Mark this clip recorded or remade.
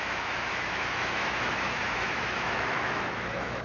remade